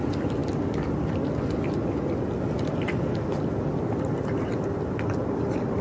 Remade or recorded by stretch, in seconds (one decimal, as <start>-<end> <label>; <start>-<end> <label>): 0.0-5.8 recorded